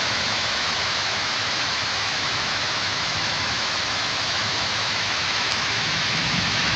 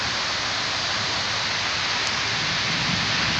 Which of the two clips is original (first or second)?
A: second